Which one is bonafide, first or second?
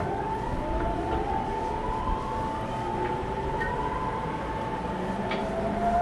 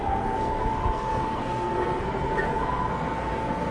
first